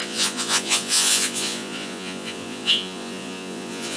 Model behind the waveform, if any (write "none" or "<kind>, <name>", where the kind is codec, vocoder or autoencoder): vocoder, Vocos